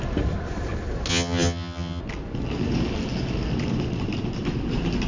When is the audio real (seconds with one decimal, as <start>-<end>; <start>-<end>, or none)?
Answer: 0.0-1.1; 2.0-5.1